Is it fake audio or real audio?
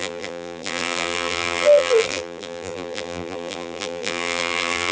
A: fake